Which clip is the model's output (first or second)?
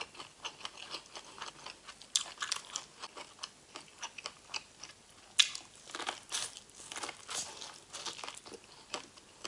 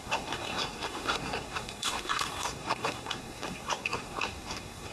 second